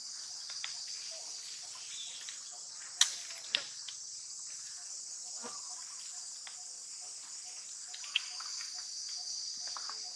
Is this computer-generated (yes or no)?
no